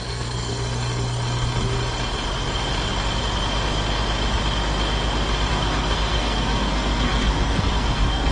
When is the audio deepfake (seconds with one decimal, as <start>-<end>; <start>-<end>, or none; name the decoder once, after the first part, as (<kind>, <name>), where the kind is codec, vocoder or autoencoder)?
0.0-0.5 (codec, SNAC); 5.5-8.3